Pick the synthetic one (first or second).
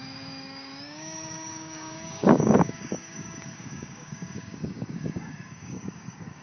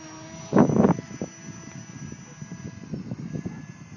first